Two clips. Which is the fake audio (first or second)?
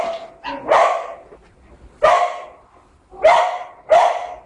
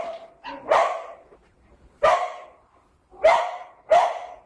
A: second